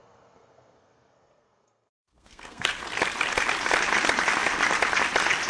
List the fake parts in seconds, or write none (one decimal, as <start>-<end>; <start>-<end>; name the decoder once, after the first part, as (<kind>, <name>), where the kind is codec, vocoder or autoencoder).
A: 0.0-2.8 (codec, SNAC)